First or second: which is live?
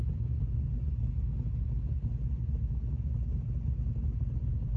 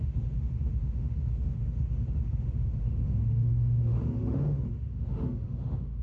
first